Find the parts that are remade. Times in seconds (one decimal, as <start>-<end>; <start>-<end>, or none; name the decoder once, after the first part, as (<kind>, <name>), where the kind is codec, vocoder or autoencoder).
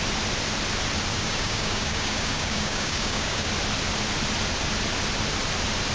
1.1-3.5 (codec, DAC)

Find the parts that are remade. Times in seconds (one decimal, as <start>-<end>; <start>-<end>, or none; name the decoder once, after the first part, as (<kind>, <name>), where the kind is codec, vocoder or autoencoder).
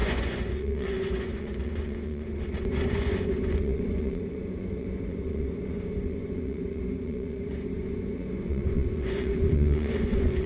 0.0-10.5 (vocoder, Vocos)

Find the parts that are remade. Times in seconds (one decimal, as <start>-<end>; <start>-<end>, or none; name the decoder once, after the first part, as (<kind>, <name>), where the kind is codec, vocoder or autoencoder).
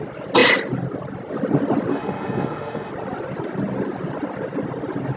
1.9-2.9 (autoencoder, DAC-VAE)